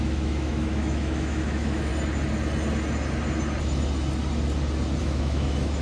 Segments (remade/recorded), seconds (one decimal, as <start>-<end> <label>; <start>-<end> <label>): 0.0-1.9 remade; 1.9-5.0 recorded; 5.0-5.8 remade